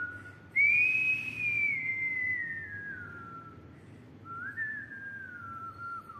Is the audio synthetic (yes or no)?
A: no